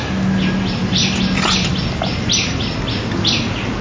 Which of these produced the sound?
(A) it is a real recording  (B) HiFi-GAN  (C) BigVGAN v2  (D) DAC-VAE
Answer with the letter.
A